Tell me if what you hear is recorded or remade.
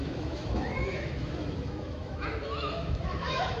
remade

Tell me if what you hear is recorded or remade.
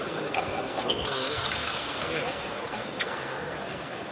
remade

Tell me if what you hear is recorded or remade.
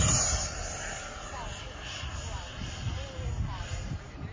recorded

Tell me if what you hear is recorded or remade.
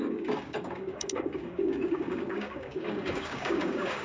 remade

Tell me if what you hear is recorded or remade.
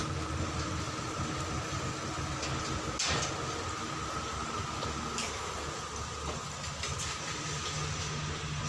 recorded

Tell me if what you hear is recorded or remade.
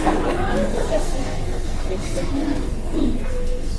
remade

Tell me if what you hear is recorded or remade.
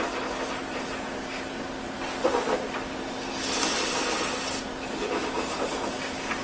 recorded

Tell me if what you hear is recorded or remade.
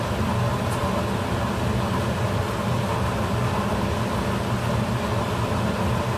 recorded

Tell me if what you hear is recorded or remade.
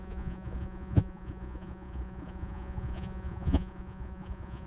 remade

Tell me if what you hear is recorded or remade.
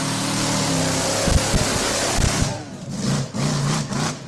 recorded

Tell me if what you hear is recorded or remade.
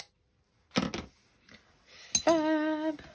recorded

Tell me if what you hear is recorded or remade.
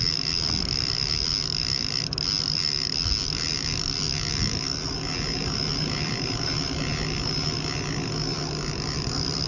recorded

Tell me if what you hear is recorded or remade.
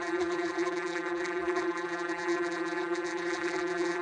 remade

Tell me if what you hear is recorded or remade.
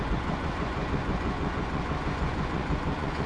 remade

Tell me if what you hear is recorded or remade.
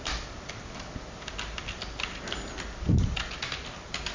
recorded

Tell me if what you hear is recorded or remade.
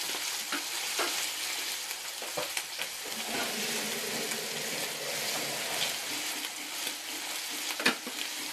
recorded